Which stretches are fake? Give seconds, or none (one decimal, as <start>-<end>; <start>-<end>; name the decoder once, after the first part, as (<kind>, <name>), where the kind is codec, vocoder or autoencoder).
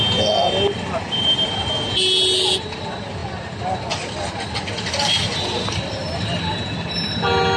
none